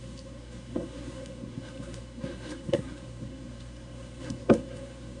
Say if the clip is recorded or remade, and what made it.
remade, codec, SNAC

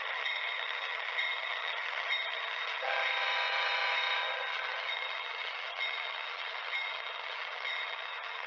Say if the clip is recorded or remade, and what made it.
remade, vocoder, HiFi-GAN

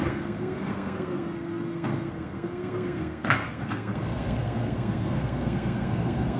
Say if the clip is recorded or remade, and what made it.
remade, codec, SNAC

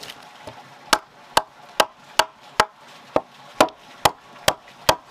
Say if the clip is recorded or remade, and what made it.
recorded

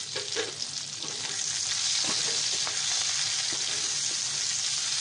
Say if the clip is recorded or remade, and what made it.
recorded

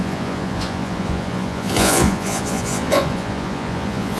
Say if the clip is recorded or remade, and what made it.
remade, vocoder, Vocos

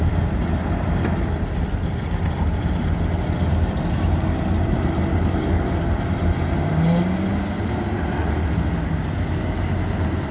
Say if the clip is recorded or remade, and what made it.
recorded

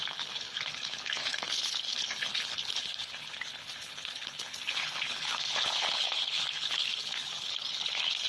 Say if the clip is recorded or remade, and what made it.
remade, codec, HILCodec